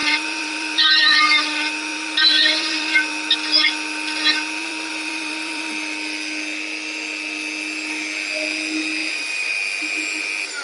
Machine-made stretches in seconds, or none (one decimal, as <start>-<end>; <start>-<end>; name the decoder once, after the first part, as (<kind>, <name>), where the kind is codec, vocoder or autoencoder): 0.0-1.2 (vocoder, BigVGAN v2); 1.9-3.1; 4.6-5.7; 9.0-9.5